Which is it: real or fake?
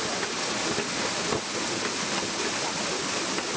real